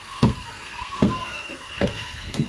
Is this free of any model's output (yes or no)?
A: no